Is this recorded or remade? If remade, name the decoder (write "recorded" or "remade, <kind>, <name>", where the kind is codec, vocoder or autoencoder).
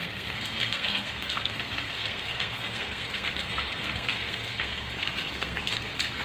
remade, codec, SNAC